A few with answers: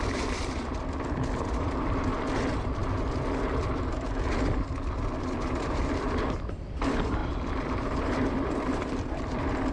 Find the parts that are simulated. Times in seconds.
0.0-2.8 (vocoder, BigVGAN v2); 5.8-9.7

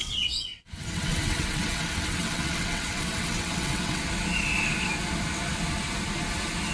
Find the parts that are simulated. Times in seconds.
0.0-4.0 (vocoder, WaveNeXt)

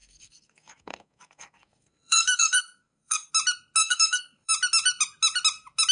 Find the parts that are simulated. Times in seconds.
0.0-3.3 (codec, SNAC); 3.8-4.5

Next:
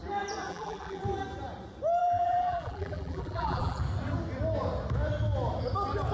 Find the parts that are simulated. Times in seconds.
0.5-1.0 (vocoder, BigVGAN v2); 2.0-3.8

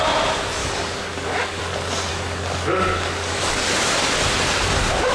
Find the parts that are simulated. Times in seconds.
0.6-1.6 (codec, DAC); 2.1-3.7

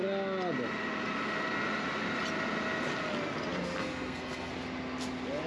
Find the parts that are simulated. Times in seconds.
3.8-4.5 (codec, SNAC)

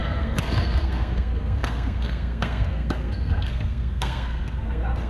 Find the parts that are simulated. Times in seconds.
0.0-5.1 (codec, SNAC)

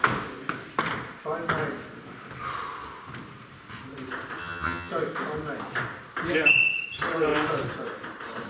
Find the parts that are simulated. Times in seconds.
4.4-4.9 (vocoder, HiFi-GAN)